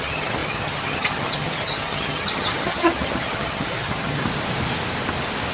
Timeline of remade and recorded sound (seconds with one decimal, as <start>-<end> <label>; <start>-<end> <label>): 0.0-4.2 remade; 4.2-5.5 recorded